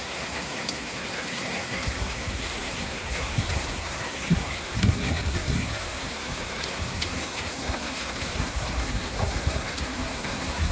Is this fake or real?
fake